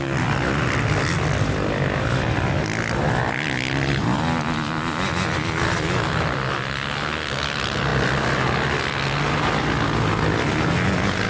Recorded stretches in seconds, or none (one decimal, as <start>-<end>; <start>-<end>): 0.0-11.3